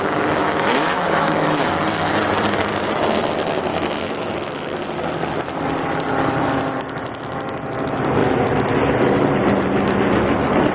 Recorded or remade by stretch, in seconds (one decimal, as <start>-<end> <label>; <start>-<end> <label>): 0.0-0.4 recorded; 0.4-1.8 remade; 1.8-3.7 recorded; 3.7-4.8 remade; 4.8-10.7 recorded